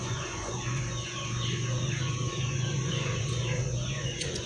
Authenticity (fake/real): fake